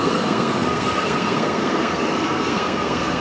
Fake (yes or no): yes